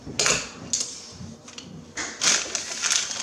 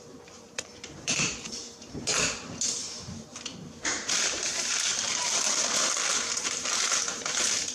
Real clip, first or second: first